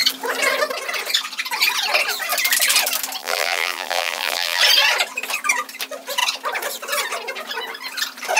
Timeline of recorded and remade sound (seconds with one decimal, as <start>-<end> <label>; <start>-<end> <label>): 0.0-3.2 recorded; 3.2-4.6 remade; 4.6-8.4 recorded